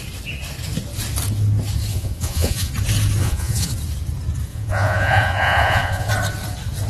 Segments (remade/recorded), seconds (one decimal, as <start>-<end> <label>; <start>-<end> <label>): 0.0-1.9 recorded; 1.9-2.7 remade; 2.7-3.2 recorded; 3.2-3.7 remade; 3.7-4.5 recorded; 4.5-6.1 remade; 6.1-6.9 recorded